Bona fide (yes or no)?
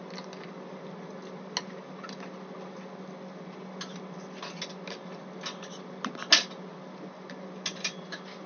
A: yes